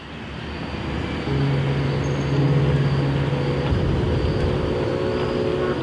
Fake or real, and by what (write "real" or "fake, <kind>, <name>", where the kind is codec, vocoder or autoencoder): real